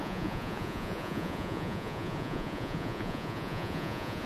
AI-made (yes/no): yes